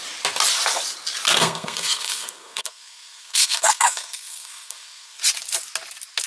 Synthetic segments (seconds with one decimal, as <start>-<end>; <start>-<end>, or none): 1.4-5.2